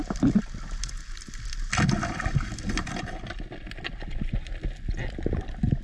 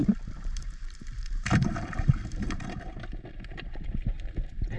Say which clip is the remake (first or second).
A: second